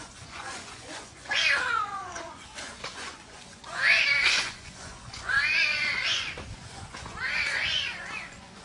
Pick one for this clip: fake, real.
fake